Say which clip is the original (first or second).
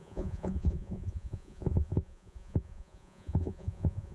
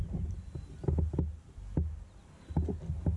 second